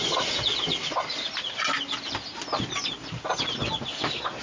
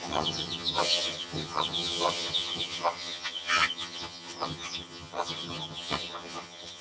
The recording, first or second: first